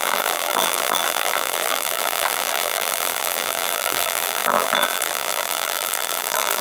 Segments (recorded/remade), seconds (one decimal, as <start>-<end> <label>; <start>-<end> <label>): 0.0-6.6 remade